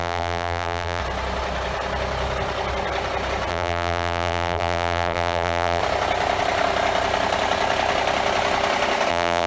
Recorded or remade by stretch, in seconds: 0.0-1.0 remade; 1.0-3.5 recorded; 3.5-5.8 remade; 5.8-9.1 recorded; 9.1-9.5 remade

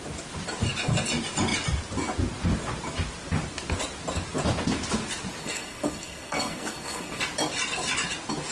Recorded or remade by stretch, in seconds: 0.0-5.4 recorded; 5.4-7.2 remade; 7.2-8.5 recorded

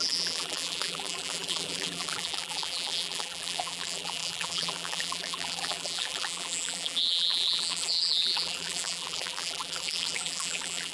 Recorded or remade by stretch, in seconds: 0.0-10.9 remade

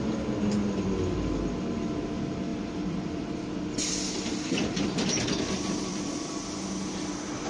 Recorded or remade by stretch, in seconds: 0.0-2.5 recorded; 2.5-6.7 remade; 6.7-7.5 recorded

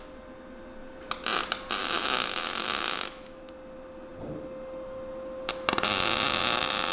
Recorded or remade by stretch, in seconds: 0.0-1.8 recorded; 1.8-3.4 remade; 3.4-6.9 recorded